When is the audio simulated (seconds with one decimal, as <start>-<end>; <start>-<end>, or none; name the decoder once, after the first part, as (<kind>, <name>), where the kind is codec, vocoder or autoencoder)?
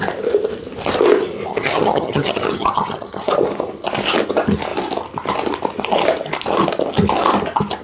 1.5-3.3 (vocoder, HiFi-GAN)